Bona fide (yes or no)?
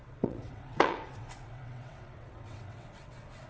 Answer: no